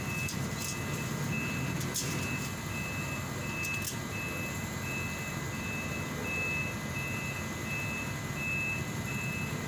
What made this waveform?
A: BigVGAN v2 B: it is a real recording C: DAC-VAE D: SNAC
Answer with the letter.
B